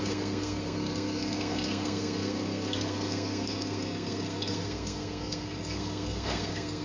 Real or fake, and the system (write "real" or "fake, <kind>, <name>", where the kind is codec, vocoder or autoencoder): fake, codec, SNAC